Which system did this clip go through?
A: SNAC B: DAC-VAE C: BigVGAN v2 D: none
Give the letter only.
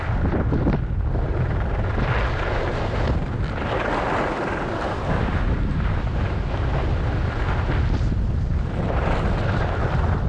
D